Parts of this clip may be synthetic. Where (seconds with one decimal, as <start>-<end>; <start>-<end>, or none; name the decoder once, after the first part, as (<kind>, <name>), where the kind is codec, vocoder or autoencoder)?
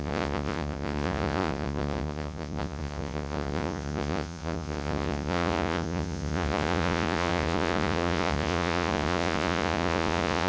0.0-10.5 (vocoder, Vocos)